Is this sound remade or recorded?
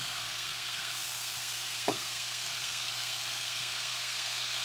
remade